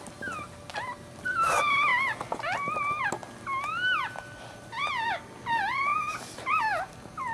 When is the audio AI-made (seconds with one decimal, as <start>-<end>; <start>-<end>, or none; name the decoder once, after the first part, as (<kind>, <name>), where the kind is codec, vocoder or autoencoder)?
none